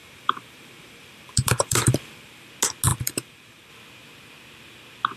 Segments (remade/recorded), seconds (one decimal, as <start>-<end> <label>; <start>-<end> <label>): 0.0-2.5 remade; 2.5-2.9 recorded; 2.9-3.7 remade; 3.7-5.2 recorded

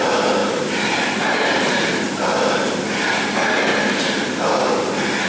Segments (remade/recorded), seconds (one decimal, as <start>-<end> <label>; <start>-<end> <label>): 0.0-0.4 recorded; 0.4-2.0 remade; 2.0-3.7 recorded; 3.7-4.7 remade; 4.7-5.3 recorded